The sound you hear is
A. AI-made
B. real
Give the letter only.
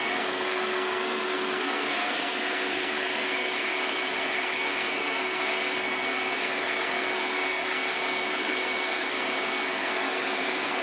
A